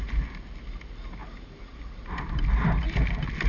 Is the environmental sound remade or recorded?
recorded